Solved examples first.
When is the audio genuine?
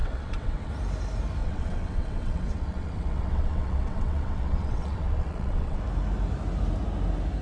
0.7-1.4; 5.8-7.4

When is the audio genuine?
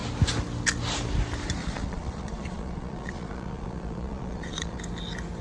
0.0-1.6; 4.8-5.4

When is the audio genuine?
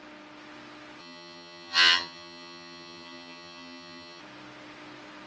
0.0-1.0; 4.2-5.3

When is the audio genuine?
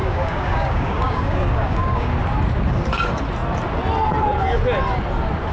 2.1-5.5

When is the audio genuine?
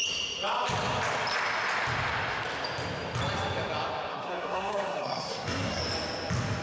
0.0-4.1; 5.8-6.6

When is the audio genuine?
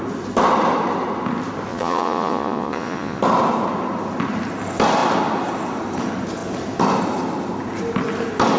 0.0-1.7; 3.2-8.6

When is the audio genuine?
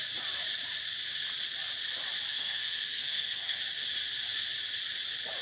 0.0-2.3; 3.6-5.4